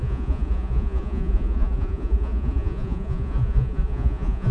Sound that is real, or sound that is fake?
fake